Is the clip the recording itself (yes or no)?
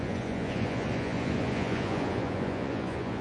no